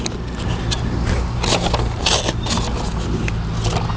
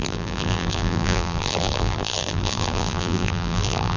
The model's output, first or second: second